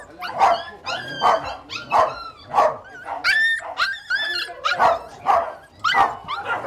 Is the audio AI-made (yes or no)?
no